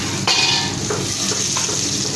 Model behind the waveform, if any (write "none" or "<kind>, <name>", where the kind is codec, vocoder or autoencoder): none